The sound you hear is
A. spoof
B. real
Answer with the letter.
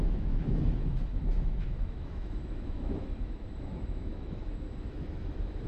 A